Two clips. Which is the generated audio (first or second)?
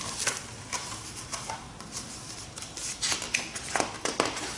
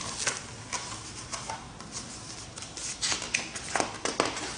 first